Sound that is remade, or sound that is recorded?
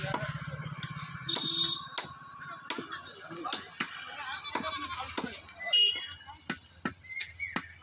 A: recorded